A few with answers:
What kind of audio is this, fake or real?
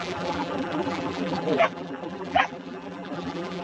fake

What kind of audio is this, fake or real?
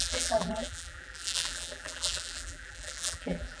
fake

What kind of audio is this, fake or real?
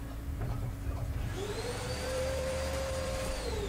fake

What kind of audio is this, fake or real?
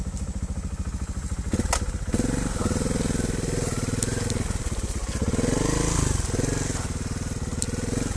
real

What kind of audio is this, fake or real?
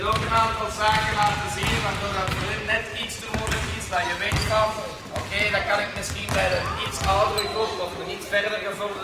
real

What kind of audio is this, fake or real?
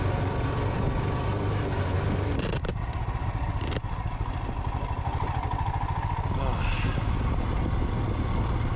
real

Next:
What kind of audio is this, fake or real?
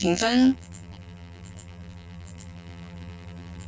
fake